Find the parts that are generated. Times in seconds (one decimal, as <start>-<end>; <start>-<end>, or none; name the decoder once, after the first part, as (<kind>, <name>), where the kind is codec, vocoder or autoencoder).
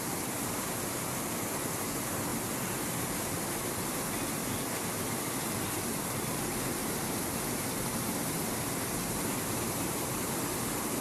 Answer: 6.8-10.3 (vocoder, BigVGAN v2)